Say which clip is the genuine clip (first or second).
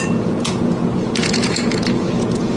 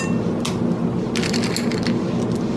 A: second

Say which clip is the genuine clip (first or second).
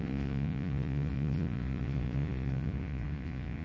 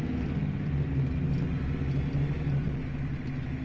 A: second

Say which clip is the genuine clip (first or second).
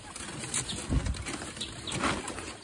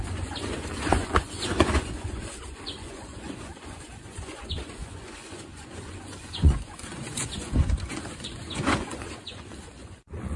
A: first